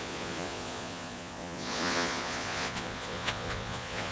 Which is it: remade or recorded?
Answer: remade